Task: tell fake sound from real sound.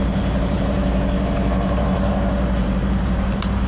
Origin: fake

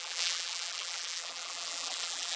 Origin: fake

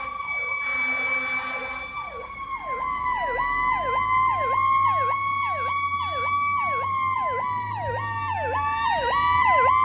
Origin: real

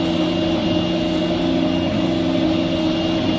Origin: real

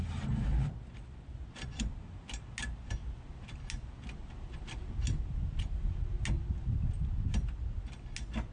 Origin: real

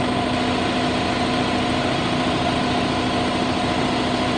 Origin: real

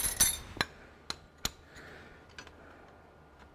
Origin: real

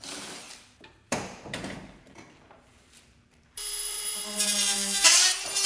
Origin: fake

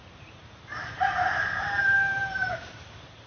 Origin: fake